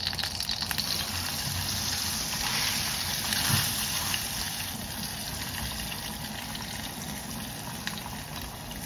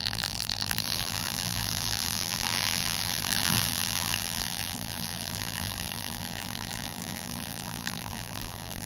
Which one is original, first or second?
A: first